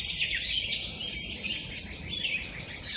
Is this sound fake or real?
real